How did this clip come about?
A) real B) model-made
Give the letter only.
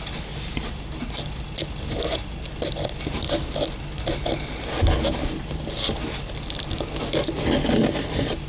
A